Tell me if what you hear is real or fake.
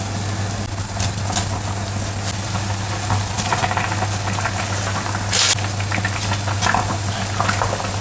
real